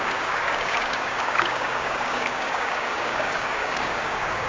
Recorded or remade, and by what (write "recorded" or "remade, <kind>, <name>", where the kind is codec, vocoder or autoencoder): remade, codec, DAC